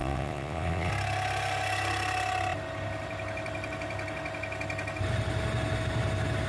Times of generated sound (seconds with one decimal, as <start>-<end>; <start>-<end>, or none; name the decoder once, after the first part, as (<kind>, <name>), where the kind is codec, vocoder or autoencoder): 0.0-0.9 (vocoder, Vocos)